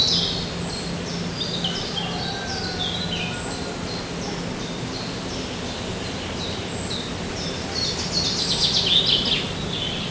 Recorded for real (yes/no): yes